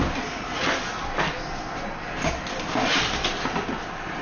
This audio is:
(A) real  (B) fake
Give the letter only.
A